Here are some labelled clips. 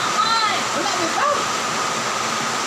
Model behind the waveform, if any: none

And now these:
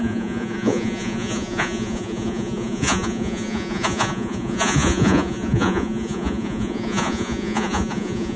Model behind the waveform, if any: vocoder, Vocos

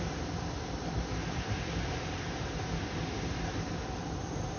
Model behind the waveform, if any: vocoder, BigVGAN v2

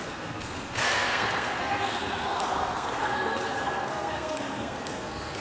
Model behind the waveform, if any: codec, SNAC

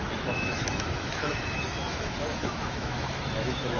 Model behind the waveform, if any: autoencoder, DAC-VAE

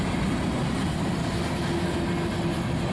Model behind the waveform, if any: none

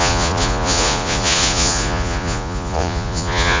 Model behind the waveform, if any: vocoder, Vocos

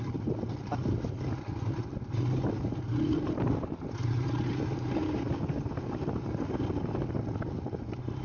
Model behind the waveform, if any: none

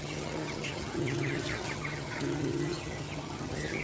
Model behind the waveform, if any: vocoder, HiFi-GAN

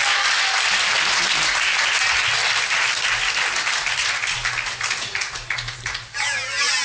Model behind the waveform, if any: none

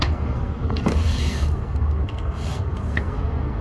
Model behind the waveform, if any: codec, SNAC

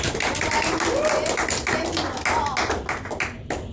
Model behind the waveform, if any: none